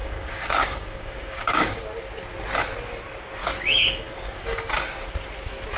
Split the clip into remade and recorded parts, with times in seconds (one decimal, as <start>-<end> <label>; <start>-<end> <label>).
0.0-1.8 remade; 1.8-3.4 recorded; 3.4-4.7 remade; 4.7-5.8 recorded